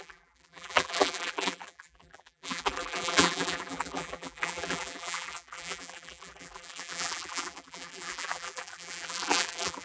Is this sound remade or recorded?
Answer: remade